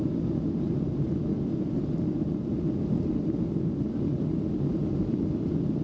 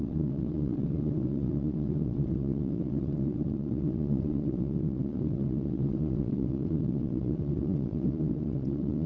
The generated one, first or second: second